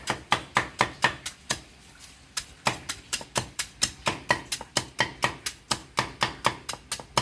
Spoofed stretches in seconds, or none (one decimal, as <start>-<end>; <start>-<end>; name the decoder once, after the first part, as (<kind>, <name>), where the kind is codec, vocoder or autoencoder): 0.5-4.1 (vocoder, BigVGAN v2)